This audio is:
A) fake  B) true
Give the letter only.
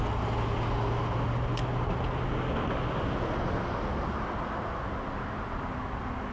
B